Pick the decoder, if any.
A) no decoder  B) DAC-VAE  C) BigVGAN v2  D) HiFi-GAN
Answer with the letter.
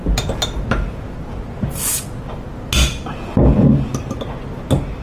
A